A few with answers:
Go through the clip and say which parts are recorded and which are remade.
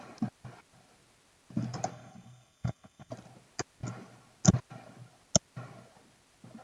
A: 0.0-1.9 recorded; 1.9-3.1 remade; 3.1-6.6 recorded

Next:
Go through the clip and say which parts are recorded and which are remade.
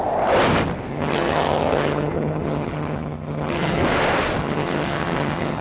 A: 0.0-0.9 recorded; 0.9-3.8 remade; 3.8-4.4 recorded; 4.4-5.6 remade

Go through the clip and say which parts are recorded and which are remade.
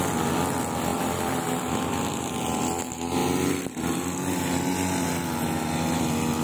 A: 0.0-0.9 recorded; 0.9-2.3 remade; 2.3-6.4 recorded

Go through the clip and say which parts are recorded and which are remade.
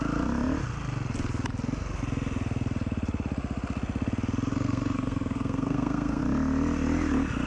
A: 0.0-4.5 recorded; 4.5-6.2 remade; 6.2-7.5 recorded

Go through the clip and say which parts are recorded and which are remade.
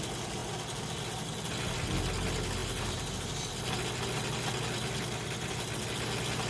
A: 0.0-6.5 recorded